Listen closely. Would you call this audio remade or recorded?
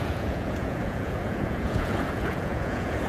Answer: remade